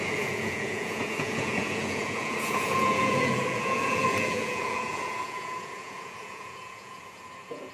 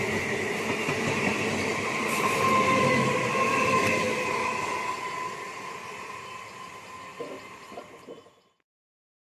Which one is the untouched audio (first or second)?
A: second